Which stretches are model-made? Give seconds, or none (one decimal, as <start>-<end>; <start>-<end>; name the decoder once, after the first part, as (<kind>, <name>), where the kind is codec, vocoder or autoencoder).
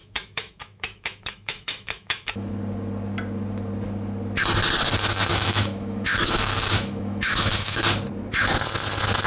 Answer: 0.0-2.5 (autoencoder, DAC-VAE); 5.3-7.8